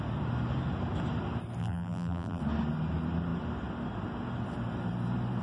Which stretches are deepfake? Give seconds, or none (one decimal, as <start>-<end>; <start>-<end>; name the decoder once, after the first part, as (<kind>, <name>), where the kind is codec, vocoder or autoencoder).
1.6-2.4 (vocoder, BigVGAN v2)